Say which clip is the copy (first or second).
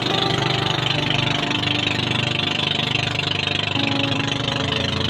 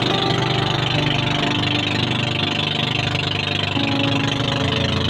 first